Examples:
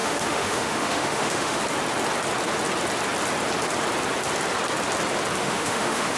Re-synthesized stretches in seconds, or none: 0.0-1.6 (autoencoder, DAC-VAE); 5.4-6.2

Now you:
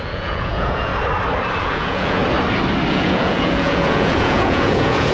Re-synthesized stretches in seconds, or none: 0.0-0.9 (vocoder, Vocos); 1.6-2.2; 2.9-5.1

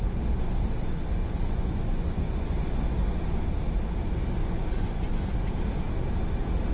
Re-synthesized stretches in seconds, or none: 1.2-2.7 (vocoder, Vocos); 4.4-5.3

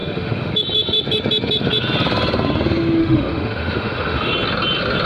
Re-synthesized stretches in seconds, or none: 0.0-0.5 (autoencoder, DAC-VAE); 3.0-4.3

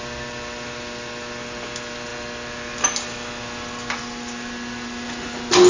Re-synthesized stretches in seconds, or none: none

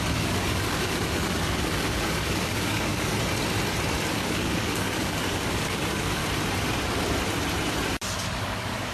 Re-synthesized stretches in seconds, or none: 0.0-3.1 (codec, DAC); 4.1-6.2; 8.3-8.9